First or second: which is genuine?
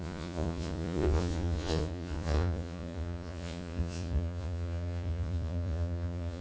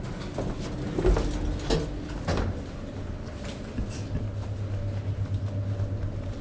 second